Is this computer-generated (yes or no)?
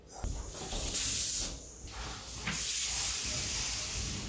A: no